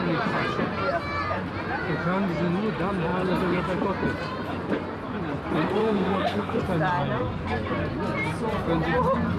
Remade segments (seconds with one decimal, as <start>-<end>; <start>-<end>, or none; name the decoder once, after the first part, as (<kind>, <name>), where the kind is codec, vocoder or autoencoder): 5.8-6.6 (codec, SNAC)